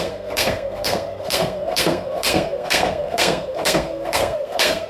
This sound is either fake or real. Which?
fake